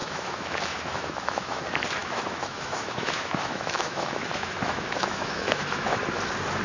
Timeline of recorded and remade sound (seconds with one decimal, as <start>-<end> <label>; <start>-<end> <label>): 0.0-1.6 remade; 1.6-2.0 recorded; 2.0-6.0 remade; 6.0-6.6 recorded